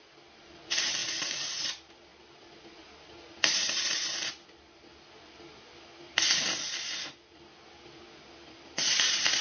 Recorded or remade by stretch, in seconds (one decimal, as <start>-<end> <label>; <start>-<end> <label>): 0.0-1.0 recorded; 1.0-1.6 remade; 1.6-9.4 recorded